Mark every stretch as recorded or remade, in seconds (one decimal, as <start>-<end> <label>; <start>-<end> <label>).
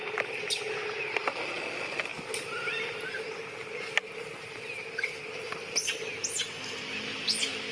0.0-7.7 recorded